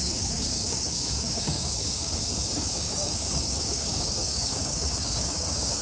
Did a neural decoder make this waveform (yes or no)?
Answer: yes